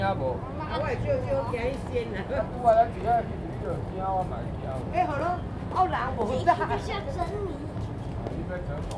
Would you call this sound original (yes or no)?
yes